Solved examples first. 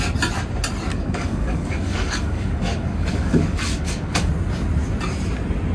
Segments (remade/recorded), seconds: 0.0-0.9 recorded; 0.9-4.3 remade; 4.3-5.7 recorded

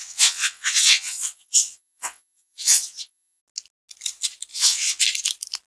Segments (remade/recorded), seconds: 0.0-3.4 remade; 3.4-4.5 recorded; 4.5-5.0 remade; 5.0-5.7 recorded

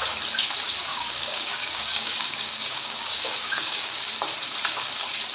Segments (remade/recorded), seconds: 0.0-0.9 recorded; 0.9-4.1 remade; 4.1-5.3 recorded

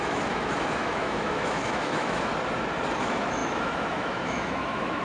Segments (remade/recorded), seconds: 0.0-2.3 remade; 2.3-3.0 recorded; 3.0-5.0 remade

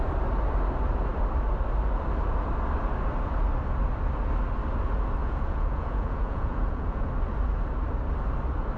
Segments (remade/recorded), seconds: 0.0-5.2 recorded; 5.2-7.1 remade; 7.1-8.8 recorded